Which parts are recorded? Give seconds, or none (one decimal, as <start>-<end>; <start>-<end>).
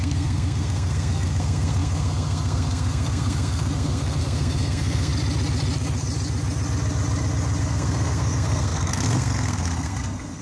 5.1-7.6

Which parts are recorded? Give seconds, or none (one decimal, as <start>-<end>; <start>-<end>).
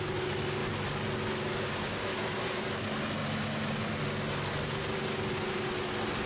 0.0-6.3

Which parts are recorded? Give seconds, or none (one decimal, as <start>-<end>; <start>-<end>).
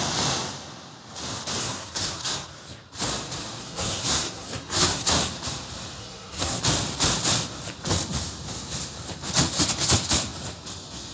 0.0-1.6; 2.5-3.6; 5.3-6.0; 6.6-11.1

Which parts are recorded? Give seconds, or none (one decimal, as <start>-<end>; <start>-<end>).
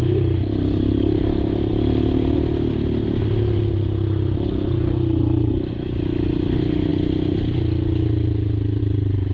0.0-9.3